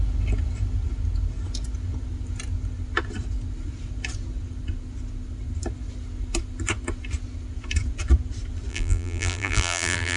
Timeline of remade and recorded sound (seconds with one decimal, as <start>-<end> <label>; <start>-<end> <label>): 0.0-8.7 recorded; 8.7-10.2 remade